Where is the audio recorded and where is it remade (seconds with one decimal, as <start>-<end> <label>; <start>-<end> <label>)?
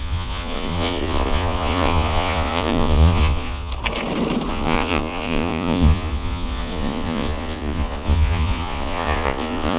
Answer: 0.0-3.7 remade; 3.7-4.5 recorded; 4.5-9.8 remade